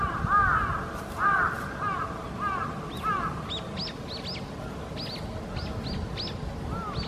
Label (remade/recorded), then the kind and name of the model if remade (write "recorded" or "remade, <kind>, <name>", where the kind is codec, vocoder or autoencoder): recorded